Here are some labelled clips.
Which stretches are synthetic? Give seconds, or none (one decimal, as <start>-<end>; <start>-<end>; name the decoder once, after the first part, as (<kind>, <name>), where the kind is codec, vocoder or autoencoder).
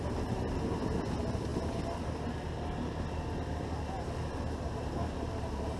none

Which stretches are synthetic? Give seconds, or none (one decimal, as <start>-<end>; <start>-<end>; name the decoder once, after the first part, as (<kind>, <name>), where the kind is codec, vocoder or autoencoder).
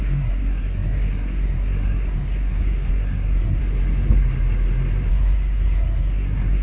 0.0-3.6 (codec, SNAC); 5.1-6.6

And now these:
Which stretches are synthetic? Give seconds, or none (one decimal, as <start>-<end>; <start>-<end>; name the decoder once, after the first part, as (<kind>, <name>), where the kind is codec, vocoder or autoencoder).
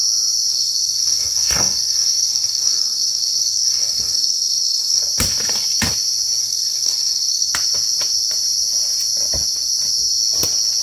0.5-5.0 (codec, SNAC); 6.4-7.5